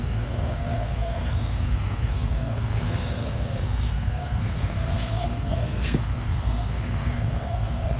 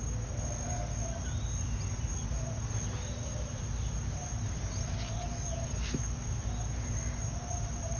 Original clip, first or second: second